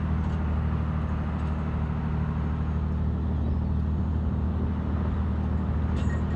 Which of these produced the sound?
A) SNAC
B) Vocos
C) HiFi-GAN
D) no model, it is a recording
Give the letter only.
D